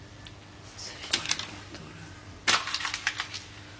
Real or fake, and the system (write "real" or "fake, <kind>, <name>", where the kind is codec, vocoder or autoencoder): real